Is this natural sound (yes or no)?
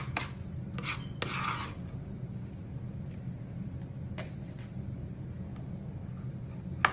yes